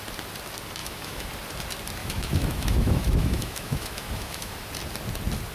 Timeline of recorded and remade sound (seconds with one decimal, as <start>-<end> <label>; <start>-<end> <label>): 0.0-0.8 recorded; 0.8-1.3 remade; 1.3-2.0 recorded; 2.0-4.5 remade; 4.5-5.5 recorded